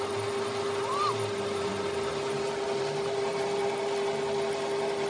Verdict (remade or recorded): recorded